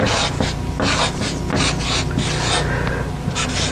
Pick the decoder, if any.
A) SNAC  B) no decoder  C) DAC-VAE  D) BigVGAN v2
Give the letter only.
B